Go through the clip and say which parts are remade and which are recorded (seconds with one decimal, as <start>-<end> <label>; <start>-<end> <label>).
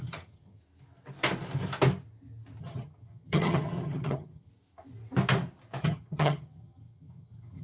0.0-0.6 remade; 0.6-2.6 recorded; 2.6-4.5 remade; 4.5-5.8 recorded; 5.8-7.6 remade